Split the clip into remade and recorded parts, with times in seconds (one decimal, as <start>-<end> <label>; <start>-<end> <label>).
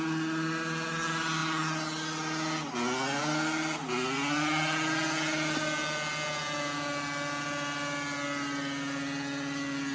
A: 0.0-9.9 recorded